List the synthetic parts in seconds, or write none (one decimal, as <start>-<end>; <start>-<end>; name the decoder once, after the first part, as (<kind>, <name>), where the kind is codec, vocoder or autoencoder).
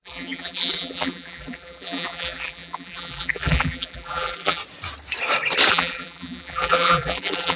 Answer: 0.0-4.6 (vocoder, BigVGAN v2); 5.7-7.6